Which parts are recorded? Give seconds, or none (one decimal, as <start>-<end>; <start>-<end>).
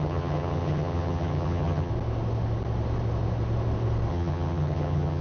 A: 1.9-4.1